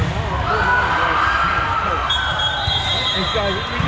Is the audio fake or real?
real